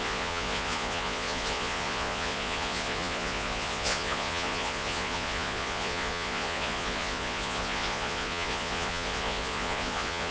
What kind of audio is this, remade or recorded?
remade